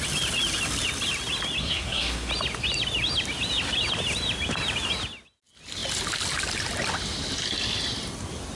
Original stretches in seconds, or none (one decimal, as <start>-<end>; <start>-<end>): 0.0-1.6; 2.3-8.5